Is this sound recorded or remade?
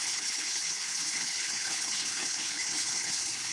remade